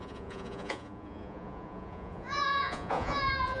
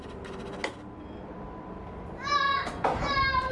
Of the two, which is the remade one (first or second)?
first